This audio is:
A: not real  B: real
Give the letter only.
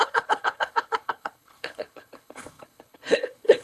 A